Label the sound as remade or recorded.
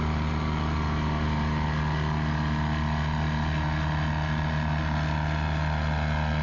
recorded